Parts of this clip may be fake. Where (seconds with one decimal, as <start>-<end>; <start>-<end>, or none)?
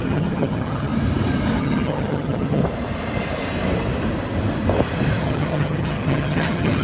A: 0.0-0.9; 1.6-2.6; 5.2-6.8